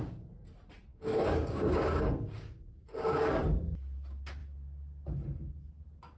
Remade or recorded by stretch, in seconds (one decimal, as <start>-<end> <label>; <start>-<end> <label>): 0.0-0.9 recorded; 0.9-3.2 remade; 3.2-6.2 recorded